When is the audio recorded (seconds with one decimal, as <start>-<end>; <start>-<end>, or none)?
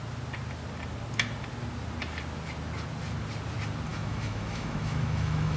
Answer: 0.0-3.9